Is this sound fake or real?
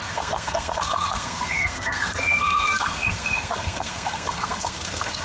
fake